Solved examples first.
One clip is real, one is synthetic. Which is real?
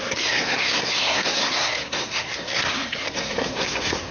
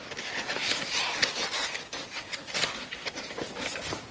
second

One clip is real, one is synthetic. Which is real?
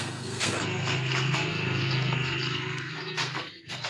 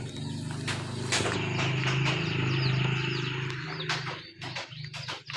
second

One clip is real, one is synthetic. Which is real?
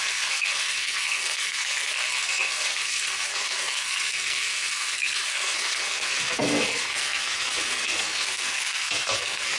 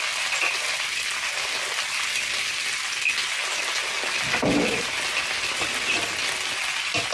second